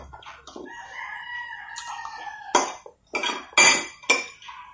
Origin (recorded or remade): recorded